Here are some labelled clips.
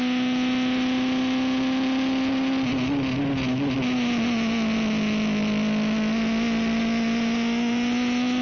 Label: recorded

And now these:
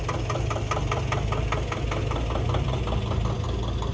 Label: recorded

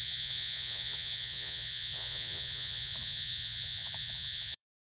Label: remade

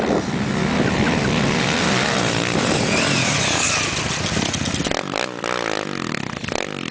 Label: recorded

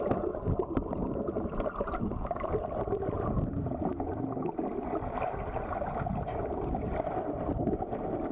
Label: recorded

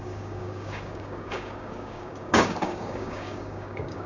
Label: remade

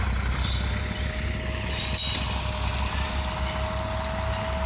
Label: recorded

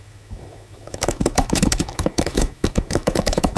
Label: remade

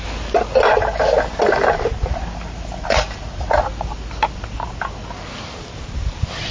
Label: recorded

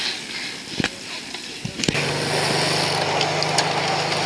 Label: recorded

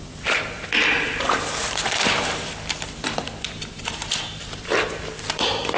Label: remade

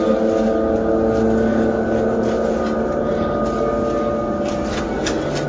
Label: recorded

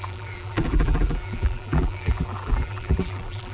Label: remade